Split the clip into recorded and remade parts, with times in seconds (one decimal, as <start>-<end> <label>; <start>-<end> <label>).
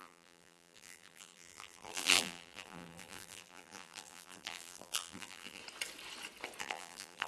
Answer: 0.0-5.6 remade; 5.6-6.6 recorded; 6.6-7.3 remade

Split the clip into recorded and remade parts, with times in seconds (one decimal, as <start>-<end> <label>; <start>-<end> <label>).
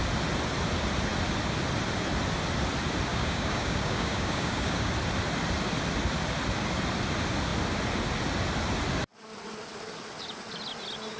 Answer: 0.0-3.1 recorded; 3.1-4.9 remade; 4.9-11.2 recorded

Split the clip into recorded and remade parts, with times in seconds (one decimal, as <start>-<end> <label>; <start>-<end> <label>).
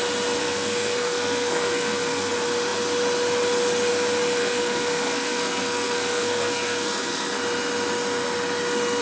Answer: 0.0-0.4 recorded; 0.4-2.3 remade; 2.3-4.4 recorded; 4.4-7.4 remade; 7.4-9.0 recorded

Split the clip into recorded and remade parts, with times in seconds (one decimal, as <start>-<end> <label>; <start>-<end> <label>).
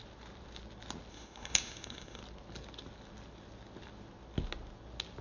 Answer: 0.0-1.1 recorded; 1.1-2.2 remade; 2.2-5.2 recorded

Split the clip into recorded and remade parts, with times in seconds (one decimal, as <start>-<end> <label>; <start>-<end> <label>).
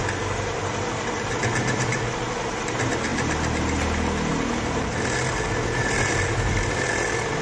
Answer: 0.0-7.4 recorded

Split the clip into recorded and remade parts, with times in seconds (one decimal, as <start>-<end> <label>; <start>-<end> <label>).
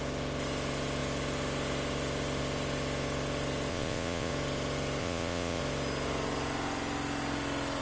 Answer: 0.0-3.7 recorded; 3.7-4.3 remade; 4.3-5.0 recorded; 5.0-5.6 remade; 5.6-7.8 recorded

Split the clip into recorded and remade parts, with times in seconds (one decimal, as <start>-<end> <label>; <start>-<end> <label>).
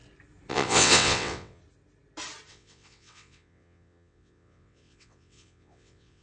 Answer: 0.0-0.5 recorded; 0.5-1.6 remade; 1.6-2.5 recorded; 2.5-6.2 remade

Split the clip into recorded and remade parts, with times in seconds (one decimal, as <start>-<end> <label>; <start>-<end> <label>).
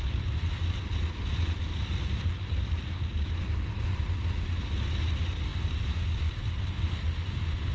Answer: 0.0-7.7 recorded